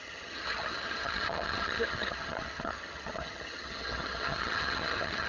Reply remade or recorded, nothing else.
remade